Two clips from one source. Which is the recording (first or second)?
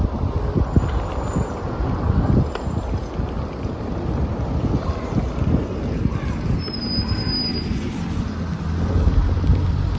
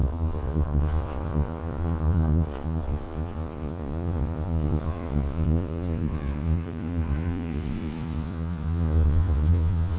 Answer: first